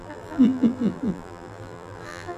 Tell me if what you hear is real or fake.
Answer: fake